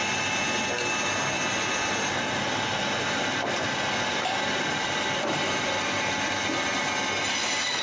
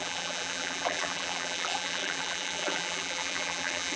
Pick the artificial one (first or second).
second